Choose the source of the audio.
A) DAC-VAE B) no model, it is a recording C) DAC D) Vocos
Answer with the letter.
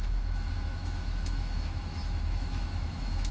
A